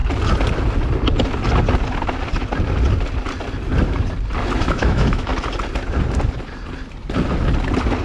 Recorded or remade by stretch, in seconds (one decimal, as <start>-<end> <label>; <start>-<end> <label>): 0.0-4.6 recorded; 4.6-5.3 remade; 5.3-8.0 recorded

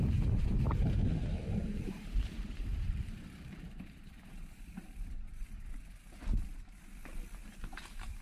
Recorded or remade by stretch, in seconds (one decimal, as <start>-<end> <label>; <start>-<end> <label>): 0.0-1.6 recorded; 1.6-5.8 remade; 5.8-7.4 recorded; 7.4-8.2 remade

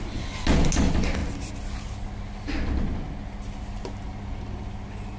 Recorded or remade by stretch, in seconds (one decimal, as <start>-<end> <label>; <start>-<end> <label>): 0.0-5.2 recorded

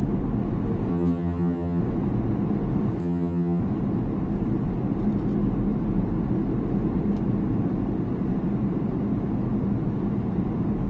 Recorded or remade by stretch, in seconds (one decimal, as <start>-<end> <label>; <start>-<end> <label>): 0.0-0.9 recorded; 0.9-1.8 remade; 1.8-3.0 recorded; 3.0-3.6 remade; 3.6-10.9 recorded

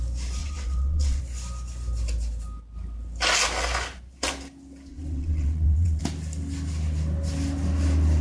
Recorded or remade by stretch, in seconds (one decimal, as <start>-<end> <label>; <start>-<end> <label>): 0.0-0.4 recorded; 0.4-1.2 remade; 1.2-4.9 recorded; 4.9-6.0 remade; 6.0-8.2 recorded